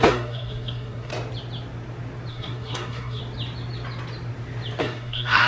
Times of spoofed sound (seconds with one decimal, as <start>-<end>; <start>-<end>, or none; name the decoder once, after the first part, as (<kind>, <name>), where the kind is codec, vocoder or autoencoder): 0.0-1.1 (codec, SNAC); 2.3-3.2; 4.8-5.5